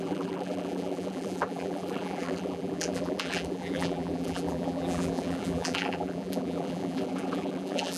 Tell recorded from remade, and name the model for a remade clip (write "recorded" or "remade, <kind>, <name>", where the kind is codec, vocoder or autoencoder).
remade, vocoder, BigVGAN v2